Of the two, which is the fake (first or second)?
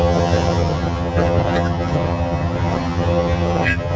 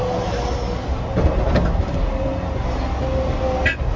first